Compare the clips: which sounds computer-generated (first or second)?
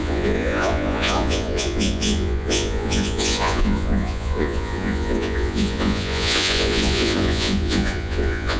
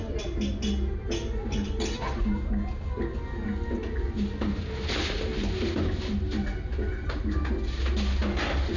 first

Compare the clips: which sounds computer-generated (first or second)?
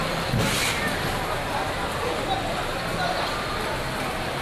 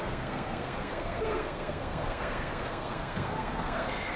second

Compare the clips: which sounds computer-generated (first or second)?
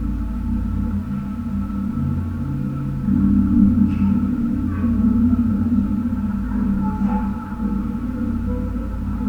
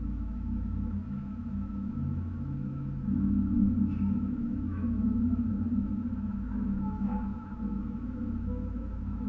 second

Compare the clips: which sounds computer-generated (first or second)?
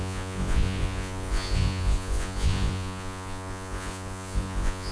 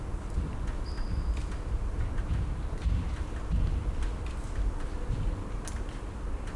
first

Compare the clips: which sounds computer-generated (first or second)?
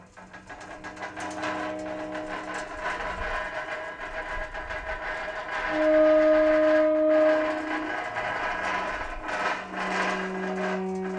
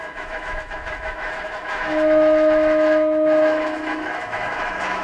second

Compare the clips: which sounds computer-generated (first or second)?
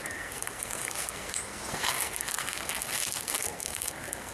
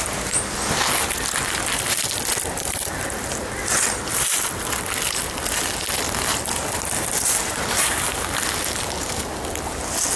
first